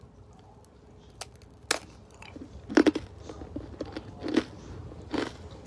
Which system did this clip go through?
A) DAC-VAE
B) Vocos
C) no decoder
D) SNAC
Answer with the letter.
C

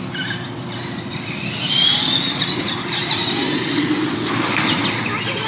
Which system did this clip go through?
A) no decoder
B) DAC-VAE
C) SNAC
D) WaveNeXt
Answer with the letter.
A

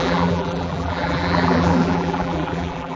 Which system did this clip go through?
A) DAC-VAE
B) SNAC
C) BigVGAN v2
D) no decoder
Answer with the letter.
C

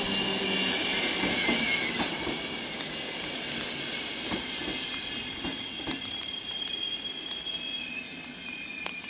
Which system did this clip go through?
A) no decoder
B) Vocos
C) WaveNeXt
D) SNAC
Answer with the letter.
A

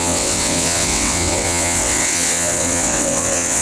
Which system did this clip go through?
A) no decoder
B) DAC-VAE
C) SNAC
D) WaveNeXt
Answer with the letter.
D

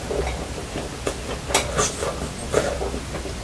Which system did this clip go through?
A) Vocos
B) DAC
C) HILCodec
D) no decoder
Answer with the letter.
D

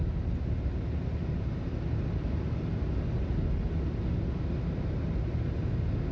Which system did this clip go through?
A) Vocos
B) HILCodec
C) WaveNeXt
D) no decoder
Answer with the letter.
D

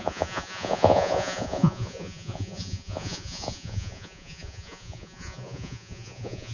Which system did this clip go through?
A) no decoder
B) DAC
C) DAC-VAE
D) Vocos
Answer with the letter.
D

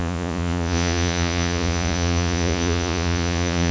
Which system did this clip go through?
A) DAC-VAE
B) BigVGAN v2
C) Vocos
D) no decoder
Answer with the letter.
C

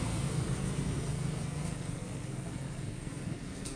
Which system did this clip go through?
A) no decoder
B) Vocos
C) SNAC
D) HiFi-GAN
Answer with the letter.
C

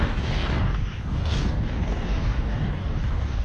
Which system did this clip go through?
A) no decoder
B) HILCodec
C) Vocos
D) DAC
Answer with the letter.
D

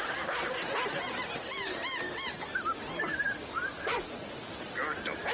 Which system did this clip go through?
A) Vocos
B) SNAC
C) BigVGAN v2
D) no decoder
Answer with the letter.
D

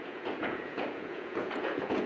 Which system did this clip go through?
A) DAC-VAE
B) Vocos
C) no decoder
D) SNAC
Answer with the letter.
B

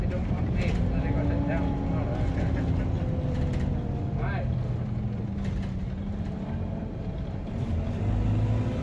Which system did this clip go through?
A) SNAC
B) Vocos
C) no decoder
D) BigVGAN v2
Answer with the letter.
C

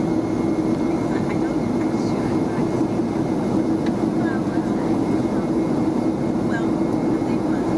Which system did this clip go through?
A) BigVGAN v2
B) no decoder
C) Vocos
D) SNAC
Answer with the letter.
B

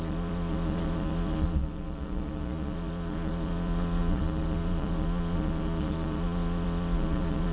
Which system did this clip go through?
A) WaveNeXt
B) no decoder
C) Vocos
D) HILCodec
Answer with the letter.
C